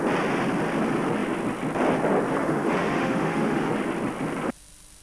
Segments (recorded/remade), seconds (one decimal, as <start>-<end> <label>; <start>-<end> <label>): 0.0-2.4 recorded; 2.4-3.7 remade; 3.7-5.0 recorded